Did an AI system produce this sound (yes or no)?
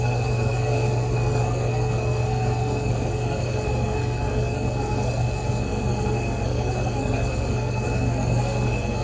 yes